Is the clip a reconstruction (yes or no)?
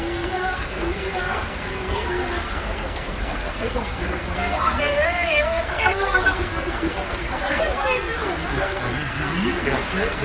yes